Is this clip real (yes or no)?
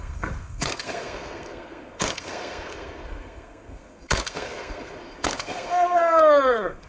no